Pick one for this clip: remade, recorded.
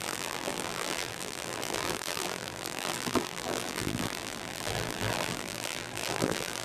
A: remade